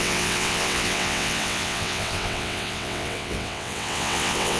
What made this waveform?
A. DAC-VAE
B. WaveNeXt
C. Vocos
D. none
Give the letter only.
B